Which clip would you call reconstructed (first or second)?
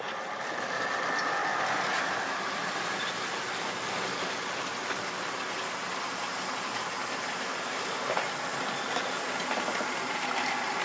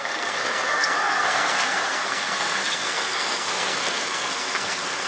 second